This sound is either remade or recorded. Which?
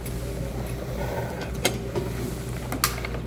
recorded